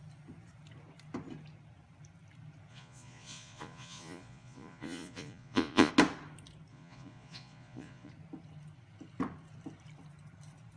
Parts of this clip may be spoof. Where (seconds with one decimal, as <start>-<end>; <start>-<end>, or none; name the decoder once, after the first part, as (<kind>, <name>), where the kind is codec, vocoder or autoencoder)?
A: 2.7-5.9 (vocoder, Vocos); 6.7-8.1